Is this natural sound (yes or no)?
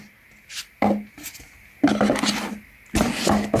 yes